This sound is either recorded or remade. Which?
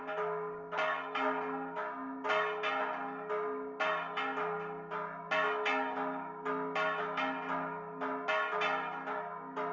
recorded